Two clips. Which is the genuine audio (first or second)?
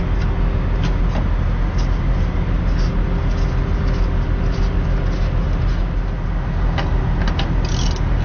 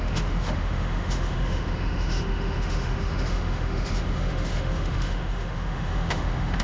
first